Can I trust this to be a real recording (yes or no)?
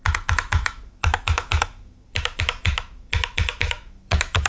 no